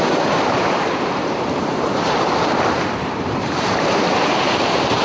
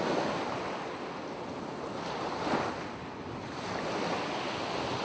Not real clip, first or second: first